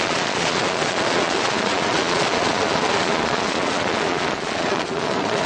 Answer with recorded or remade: remade